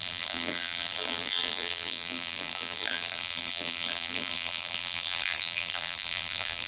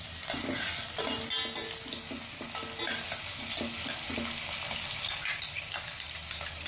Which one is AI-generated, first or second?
first